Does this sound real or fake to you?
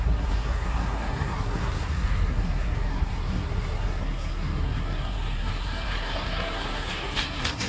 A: fake